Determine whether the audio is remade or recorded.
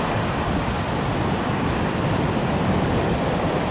recorded